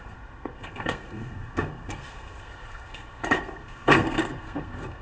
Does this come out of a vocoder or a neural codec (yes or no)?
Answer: yes